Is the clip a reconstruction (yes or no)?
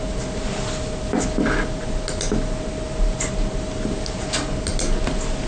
no